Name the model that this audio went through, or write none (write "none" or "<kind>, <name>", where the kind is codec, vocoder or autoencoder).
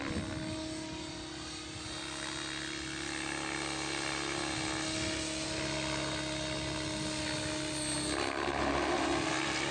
none